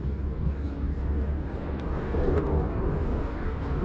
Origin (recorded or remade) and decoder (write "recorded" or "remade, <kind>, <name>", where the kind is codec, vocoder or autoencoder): remade, codec, DAC